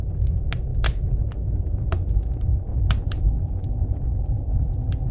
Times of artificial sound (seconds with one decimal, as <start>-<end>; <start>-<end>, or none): 2.7-3.9